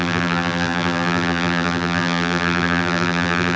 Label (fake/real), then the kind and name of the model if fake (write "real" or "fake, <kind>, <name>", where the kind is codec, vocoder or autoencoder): fake, vocoder, BigVGAN v2